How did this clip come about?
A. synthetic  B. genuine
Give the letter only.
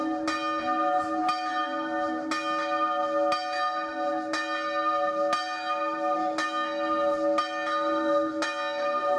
B